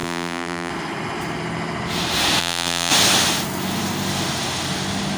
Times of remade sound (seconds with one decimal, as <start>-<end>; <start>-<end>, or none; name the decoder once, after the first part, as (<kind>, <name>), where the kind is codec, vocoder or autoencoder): 0.0-0.7 (vocoder, BigVGAN v2); 2.4-2.9